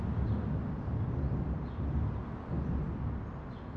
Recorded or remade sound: recorded